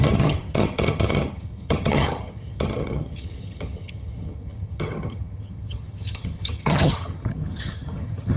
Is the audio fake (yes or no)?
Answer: yes